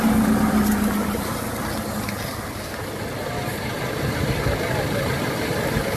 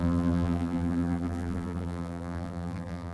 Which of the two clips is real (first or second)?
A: first